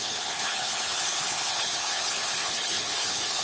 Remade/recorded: remade